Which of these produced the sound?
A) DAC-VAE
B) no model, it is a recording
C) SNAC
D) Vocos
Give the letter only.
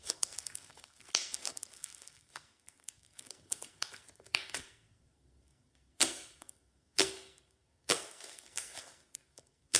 C